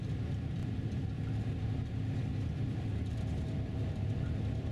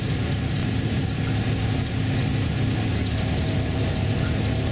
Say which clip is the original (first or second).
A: second